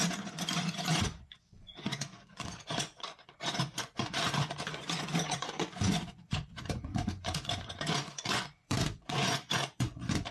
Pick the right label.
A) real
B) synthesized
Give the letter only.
B